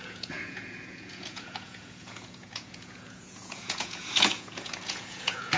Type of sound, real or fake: fake